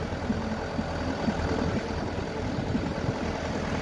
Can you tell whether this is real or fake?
real